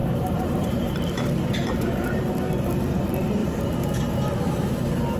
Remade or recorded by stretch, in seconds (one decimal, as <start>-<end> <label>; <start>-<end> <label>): 0.0-2.3 remade; 2.3-5.2 recorded